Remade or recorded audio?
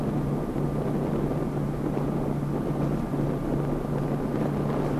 recorded